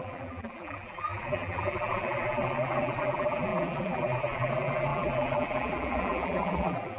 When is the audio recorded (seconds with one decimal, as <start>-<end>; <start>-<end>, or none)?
none